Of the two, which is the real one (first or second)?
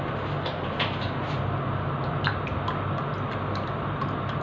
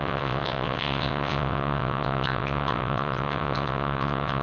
first